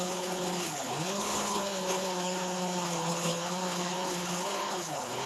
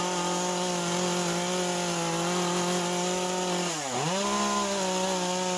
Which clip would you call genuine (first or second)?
second